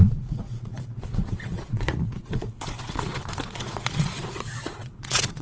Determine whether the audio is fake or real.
fake